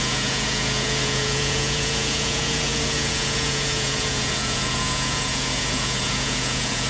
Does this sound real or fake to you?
fake